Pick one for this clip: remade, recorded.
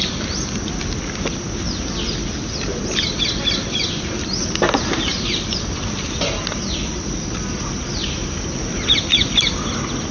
recorded